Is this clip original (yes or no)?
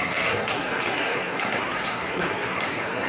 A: no